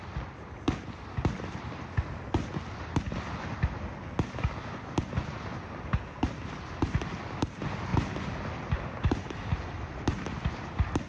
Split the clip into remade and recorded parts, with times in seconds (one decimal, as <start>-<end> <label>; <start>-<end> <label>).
0.0-11.1 recorded